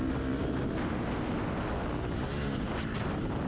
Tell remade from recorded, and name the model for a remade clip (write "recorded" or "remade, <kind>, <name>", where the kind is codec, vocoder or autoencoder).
recorded